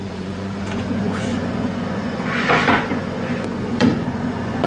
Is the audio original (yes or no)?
no